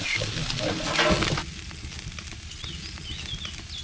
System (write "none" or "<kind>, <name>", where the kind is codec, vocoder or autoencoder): none